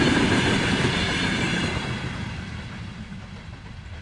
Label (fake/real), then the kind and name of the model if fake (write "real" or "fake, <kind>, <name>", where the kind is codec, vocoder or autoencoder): fake, vocoder, BigVGAN v2